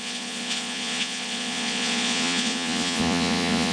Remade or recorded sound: remade